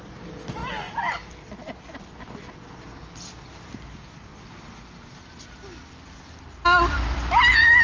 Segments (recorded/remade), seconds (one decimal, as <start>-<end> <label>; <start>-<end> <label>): 0.0-4.3 recorded; 4.3-7.3 remade; 7.3-7.8 recorded